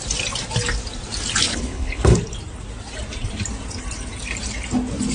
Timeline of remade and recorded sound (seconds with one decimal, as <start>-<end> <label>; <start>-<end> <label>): 0.0-1.5 recorded; 1.5-2.2 remade; 2.2-5.1 recorded